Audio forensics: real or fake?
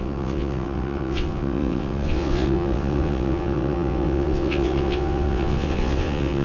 fake